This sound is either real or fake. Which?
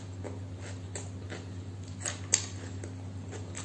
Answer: real